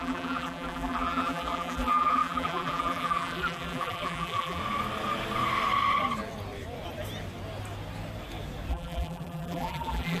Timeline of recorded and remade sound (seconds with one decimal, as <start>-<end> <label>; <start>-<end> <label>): 0.0-4.6 remade; 4.6-8.7 recorded; 8.7-10.2 remade